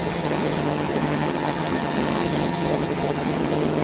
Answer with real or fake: fake